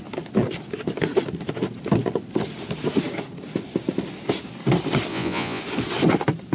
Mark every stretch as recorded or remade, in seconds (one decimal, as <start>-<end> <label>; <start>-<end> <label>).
0.0-5.1 recorded; 5.1-5.6 remade; 5.6-6.5 recorded